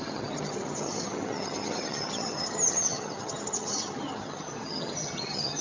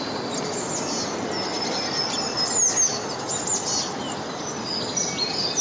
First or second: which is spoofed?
first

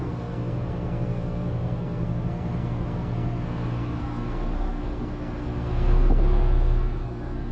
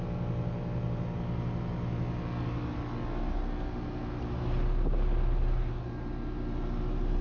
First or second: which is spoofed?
first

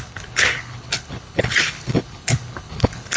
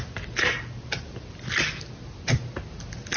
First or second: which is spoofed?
first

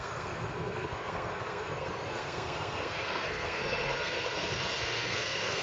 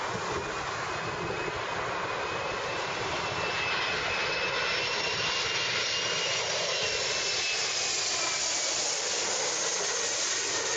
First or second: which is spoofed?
first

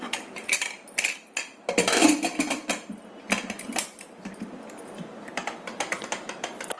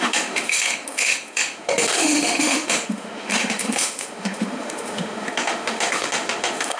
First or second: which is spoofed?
second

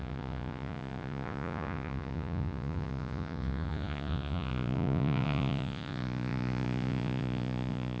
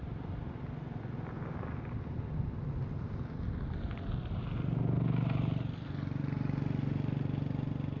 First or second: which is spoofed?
first